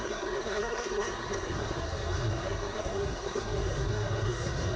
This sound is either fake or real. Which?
fake